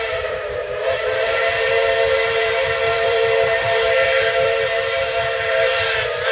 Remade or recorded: remade